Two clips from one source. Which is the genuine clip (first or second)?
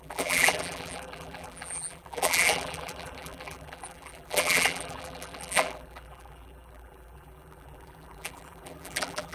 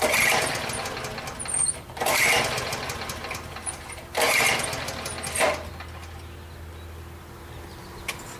second